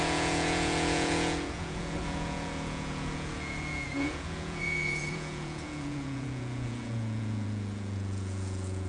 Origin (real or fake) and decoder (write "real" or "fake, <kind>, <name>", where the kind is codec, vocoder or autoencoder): fake, vocoder, Vocos